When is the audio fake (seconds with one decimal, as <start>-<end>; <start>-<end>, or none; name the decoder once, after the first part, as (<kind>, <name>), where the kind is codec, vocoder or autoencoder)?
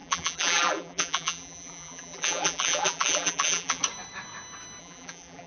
0.0-3.8 (vocoder, BigVGAN v2); 4.8-5.5